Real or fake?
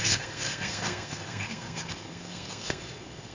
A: fake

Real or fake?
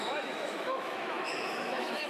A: fake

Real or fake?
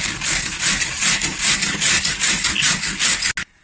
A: real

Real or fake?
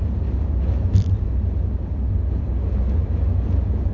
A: fake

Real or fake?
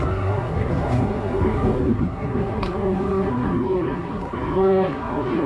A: fake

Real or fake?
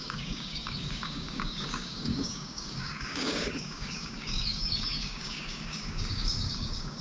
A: fake